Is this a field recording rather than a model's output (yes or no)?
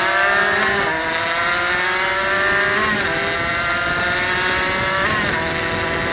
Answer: yes